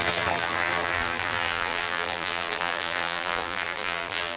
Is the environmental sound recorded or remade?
remade